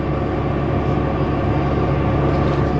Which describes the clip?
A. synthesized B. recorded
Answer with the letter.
B